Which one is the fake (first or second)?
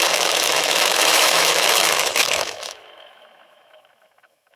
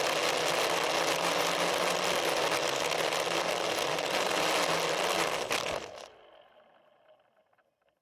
first